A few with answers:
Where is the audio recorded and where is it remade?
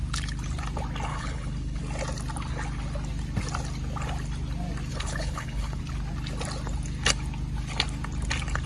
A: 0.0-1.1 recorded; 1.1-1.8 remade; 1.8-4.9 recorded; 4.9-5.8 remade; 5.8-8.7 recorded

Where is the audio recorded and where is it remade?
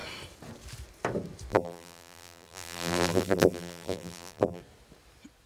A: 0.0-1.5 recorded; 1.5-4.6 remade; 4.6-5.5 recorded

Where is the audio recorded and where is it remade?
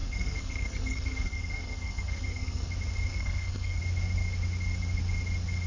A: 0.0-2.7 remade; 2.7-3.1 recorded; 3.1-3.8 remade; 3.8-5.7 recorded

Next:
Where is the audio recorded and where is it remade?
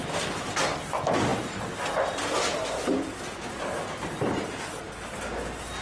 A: 0.0-5.8 recorded